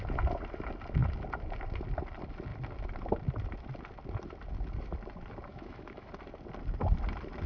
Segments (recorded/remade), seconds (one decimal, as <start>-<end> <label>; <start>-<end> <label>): 0.0-5.5 recorded; 5.5-6.1 remade; 6.1-7.5 recorded